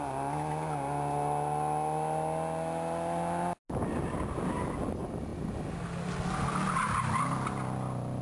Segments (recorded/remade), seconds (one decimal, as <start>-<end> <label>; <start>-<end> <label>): 0.0-8.2 recorded